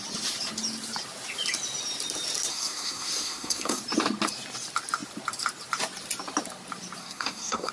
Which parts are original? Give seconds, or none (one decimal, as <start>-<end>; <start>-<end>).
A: 0.0-2.5; 3.8-7.0

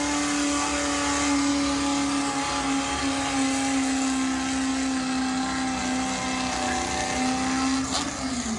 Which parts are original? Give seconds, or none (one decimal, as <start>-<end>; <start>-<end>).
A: 0.0-8.6